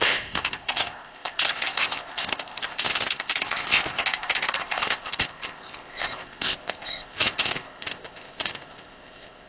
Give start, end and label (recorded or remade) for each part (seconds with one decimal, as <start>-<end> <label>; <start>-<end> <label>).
0.0-9.5 remade